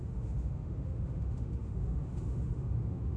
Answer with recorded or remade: remade